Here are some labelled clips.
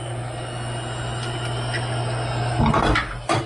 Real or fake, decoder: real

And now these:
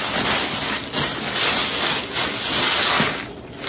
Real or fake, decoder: real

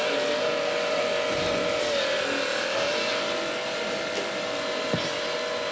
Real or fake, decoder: real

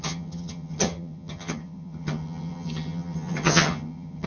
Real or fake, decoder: fake, vocoder, HiFi-GAN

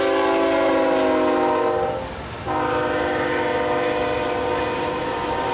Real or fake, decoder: real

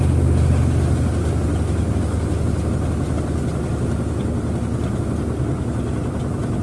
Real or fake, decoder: real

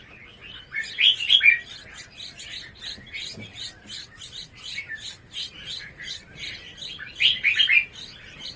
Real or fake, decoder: real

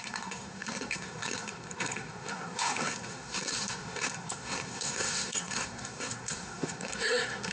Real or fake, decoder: fake, codec, SNAC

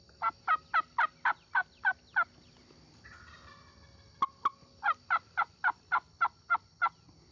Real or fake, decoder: real